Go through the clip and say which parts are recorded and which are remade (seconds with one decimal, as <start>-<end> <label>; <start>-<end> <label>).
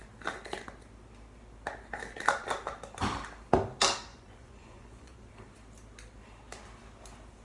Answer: 0.0-4.1 recorded; 4.1-5.3 remade; 5.3-7.4 recorded